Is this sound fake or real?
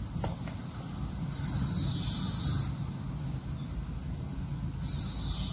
real